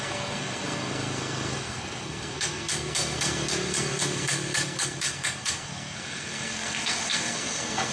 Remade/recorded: remade